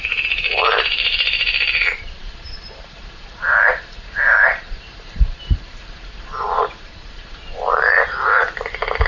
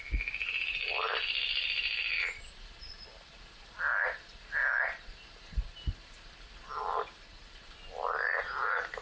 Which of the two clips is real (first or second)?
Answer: second